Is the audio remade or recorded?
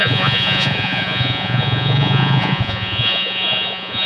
remade